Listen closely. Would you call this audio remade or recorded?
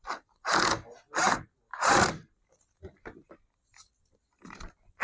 recorded